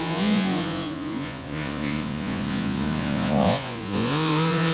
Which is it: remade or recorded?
remade